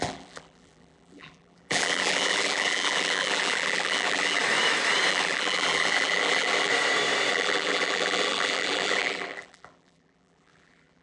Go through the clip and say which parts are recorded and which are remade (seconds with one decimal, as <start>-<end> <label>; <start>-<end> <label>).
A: 0.0-4.4 remade; 4.4-5.1 recorded; 5.1-6.7 remade; 6.7-7.3 recorded; 7.3-11.0 remade